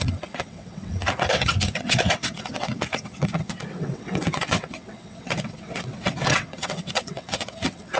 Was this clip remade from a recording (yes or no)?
yes